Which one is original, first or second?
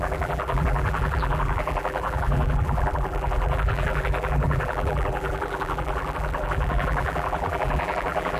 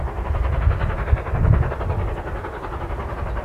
second